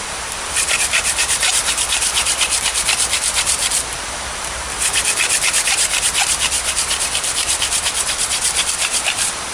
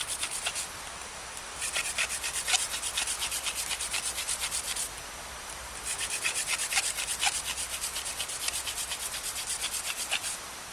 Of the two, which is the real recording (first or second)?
second